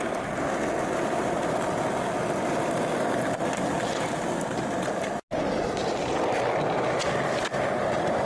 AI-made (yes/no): no